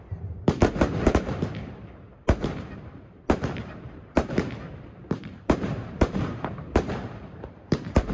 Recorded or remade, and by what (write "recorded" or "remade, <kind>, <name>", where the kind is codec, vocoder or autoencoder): remade, vocoder, BigVGAN v2